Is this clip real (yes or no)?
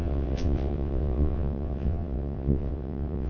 no